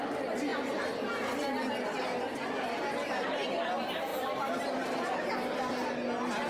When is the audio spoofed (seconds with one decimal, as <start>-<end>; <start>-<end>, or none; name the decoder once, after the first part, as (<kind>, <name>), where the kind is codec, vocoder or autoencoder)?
4.1-5.9 (vocoder, BigVGAN v2)